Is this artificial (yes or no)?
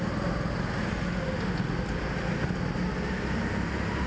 no